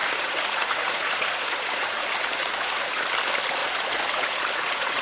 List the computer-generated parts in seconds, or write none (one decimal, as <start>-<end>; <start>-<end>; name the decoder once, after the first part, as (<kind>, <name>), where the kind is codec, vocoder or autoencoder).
0.0-3.0 (vocoder, Vocos); 3.6-5.0